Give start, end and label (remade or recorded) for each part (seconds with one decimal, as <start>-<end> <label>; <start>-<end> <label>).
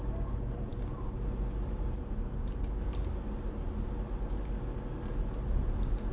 0.0-6.1 recorded